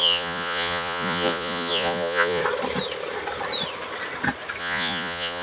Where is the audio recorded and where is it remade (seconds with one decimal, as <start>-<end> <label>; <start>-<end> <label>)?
0.0-2.4 remade; 2.4-4.6 recorded; 4.6-5.4 remade